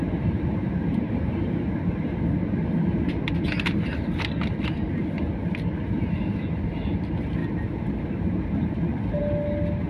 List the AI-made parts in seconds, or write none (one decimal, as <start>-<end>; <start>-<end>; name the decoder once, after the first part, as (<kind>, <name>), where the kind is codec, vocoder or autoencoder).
0.0-1.7 (vocoder, BigVGAN v2)

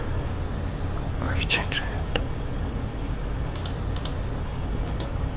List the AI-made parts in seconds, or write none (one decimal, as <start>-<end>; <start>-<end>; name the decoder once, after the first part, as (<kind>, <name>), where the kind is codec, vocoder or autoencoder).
0.0-0.4 (codec, DAC); 1.1-3.6; 4.4-5.4